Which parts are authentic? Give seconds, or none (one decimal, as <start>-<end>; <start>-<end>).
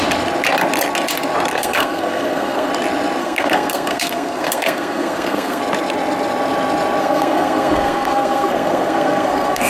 0.0-1.5; 2.7-3.2; 5.6-7.0